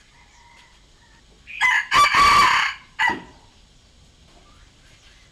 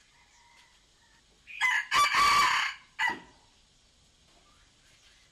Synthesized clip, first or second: first